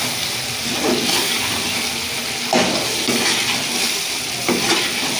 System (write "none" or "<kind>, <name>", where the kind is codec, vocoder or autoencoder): none